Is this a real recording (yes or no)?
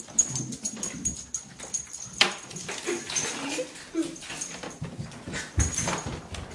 yes